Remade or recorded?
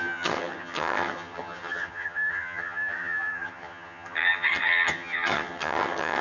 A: remade